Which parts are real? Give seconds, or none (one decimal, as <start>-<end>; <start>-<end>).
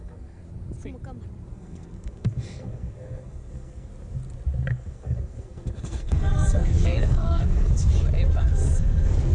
0.4-1.5; 3.9-4.7; 7.9-8.4